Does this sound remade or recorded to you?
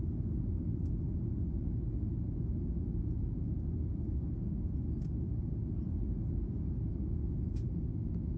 recorded